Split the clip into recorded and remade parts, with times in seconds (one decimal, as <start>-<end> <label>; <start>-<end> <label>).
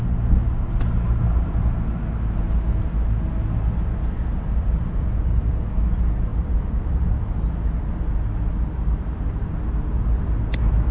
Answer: 0.0-10.9 recorded